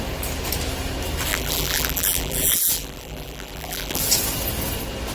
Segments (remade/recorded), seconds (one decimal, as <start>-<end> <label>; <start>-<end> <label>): 0.0-1.3 recorded; 1.3-4.0 remade; 4.0-5.1 recorded